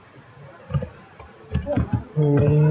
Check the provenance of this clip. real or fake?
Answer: real